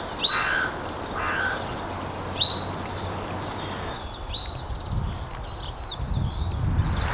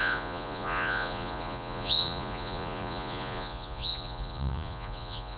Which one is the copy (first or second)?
second